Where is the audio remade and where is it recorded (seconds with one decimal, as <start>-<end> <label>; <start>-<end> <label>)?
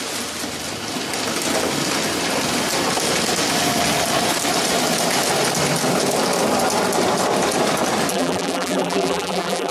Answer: 0.0-8.1 recorded; 8.1-9.7 remade